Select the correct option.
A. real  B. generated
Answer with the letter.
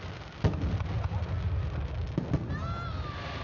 A